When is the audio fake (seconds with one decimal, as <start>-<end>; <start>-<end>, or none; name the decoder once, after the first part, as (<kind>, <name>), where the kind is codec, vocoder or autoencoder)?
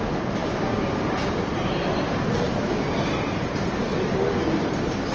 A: none